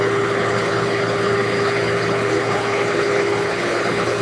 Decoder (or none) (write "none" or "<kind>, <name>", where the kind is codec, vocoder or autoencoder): codec, HILCodec